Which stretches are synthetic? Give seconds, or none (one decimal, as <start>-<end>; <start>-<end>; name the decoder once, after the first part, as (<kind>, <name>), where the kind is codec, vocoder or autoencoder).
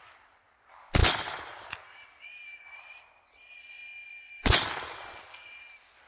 none